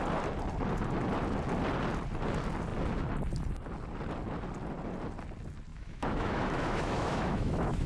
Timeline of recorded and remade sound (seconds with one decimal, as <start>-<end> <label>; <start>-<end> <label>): 0.0-5.7 recorded; 5.7-7.9 remade

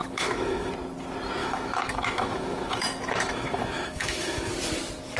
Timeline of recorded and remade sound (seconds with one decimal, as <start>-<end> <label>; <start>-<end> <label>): 0.0-0.7 remade; 0.7-1.4 recorded; 1.4-4.5 remade; 4.5-5.2 recorded

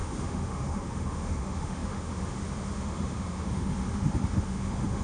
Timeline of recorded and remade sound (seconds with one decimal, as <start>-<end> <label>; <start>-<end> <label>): 0.0-5.0 remade

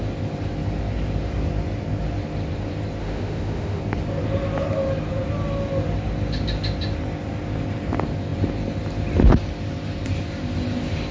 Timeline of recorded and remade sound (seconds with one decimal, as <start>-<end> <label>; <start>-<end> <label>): 0.0-3.0 recorded; 3.0-3.8 remade; 3.8-11.1 recorded

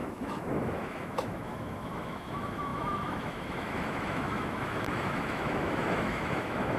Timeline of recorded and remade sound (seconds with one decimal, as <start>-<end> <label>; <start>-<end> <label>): 0.0-6.8 remade